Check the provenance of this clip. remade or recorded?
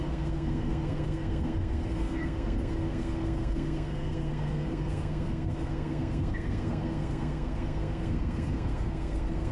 remade